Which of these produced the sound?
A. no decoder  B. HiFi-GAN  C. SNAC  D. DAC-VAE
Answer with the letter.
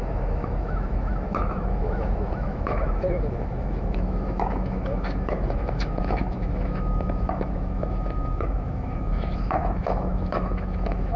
D